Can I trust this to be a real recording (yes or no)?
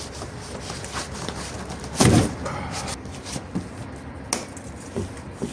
yes